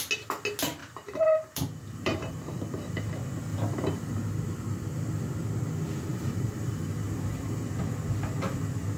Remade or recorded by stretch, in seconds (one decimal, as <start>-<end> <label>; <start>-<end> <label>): 0.0-0.8 recorded; 0.8-3.1 remade; 3.1-3.5 recorded; 3.5-4.1 remade; 4.1-6.1 recorded; 6.1-7.6 remade; 7.6-9.0 recorded